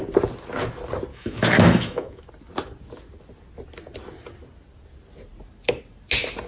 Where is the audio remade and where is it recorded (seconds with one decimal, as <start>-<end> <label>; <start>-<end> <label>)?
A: 0.0-1.1 recorded; 1.1-2.2 remade; 2.2-6.5 recorded